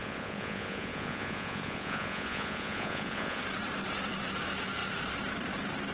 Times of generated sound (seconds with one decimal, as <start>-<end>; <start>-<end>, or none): 0.0-3.4